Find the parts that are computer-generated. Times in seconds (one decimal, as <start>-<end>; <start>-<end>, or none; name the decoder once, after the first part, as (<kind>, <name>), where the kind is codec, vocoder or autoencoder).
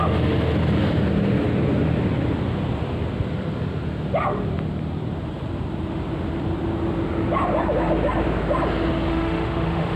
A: 9.1-10.0 (autoencoder, DAC-VAE)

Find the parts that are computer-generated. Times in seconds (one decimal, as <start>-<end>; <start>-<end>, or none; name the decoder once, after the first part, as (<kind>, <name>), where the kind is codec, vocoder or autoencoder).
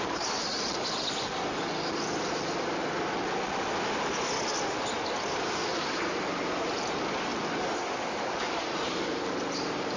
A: 0.0-0.5 (vocoder, BigVGAN v2); 5.7-7.3; 8.0-10.0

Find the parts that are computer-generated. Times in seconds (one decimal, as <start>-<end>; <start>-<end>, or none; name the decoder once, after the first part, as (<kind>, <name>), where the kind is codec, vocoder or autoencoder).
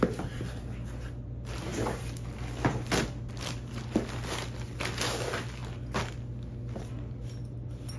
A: none